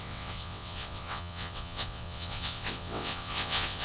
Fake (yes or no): yes